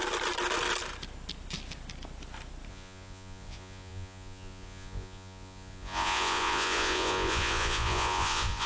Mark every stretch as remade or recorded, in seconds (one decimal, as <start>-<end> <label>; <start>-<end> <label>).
0.0-2.7 recorded; 2.7-8.7 remade